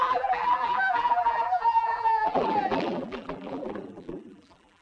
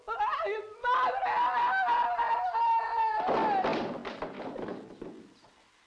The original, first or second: second